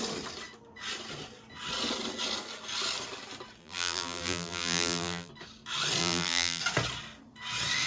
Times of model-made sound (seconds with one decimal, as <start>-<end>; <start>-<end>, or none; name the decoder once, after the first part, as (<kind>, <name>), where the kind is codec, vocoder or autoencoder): 3.6-5.3 (vocoder, BigVGAN v2); 6.0-6.6